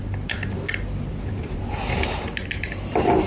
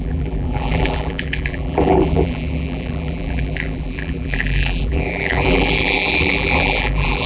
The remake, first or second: second